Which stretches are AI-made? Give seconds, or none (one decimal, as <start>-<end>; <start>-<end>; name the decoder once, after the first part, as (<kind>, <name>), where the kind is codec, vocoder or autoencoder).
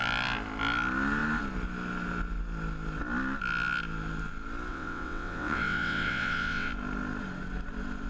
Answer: 4.7-6.7 (vocoder, WaveNeXt)